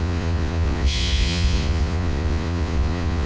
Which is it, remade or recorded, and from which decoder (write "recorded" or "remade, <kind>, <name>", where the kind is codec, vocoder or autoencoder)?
remade, vocoder, Vocos